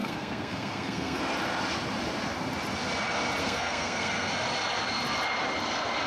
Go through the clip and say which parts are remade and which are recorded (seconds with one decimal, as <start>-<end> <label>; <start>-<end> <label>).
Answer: 0.0-1.2 remade; 1.2-3.4 recorded; 3.4-4.3 remade; 4.3-6.1 recorded